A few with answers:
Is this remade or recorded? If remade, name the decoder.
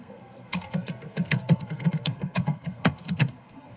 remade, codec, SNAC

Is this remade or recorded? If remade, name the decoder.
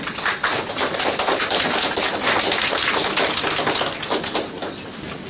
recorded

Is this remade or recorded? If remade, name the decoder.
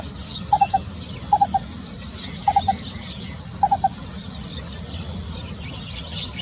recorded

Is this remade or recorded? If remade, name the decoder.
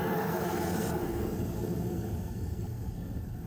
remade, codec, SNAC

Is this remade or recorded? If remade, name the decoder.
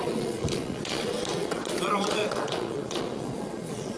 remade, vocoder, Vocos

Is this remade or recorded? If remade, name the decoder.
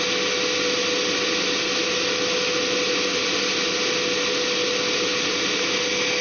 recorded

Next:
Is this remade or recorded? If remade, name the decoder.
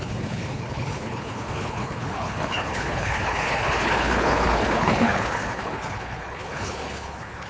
remade, codec, HILCodec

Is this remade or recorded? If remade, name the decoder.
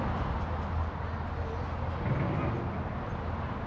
recorded